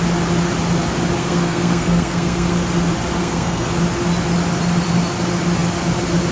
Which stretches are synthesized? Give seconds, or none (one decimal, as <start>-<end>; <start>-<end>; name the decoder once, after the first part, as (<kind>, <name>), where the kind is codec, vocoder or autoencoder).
1.2-2.5 (codec, SNAC); 3.2-3.8